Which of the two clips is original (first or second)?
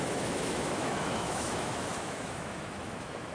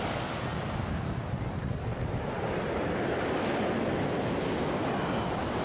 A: second